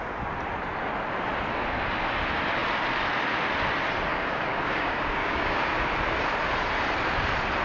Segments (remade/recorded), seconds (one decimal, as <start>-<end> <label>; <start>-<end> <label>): 0.0-4.1 recorded; 4.1-5.9 remade; 5.9-7.6 recorded